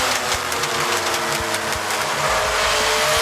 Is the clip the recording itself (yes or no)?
yes